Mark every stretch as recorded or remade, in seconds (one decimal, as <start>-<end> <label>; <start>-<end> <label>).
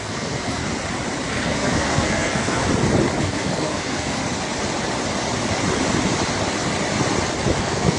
0.0-0.6 remade; 0.6-1.3 recorded; 1.3-2.6 remade; 2.6-3.2 recorded; 3.2-4.2 remade; 4.2-7.6 recorded; 7.6-8.0 remade